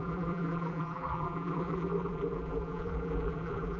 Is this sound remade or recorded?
remade